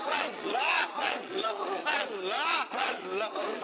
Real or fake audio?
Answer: fake